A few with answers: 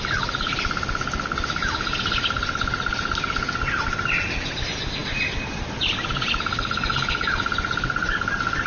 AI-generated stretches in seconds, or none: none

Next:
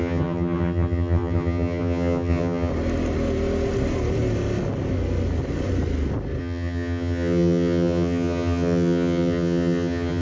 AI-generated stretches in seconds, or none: 0.0-2.7 (vocoder, HiFi-GAN); 6.4-10.2

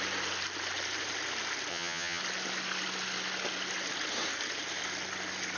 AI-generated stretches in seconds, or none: 1.7-2.2 (vocoder, HiFi-GAN)

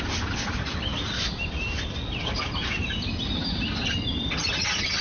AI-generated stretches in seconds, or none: none

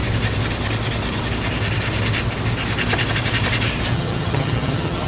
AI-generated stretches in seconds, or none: 3.9-5.1 (vocoder, HiFi-GAN)

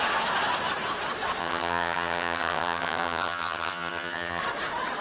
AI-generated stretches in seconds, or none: 1.4-4.4 (vocoder, HiFi-GAN)